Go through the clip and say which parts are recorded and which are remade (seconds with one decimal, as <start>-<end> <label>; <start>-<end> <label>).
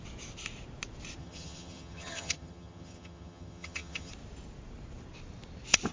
0.0-1.2 recorded; 1.2-4.1 remade; 4.1-5.9 recorded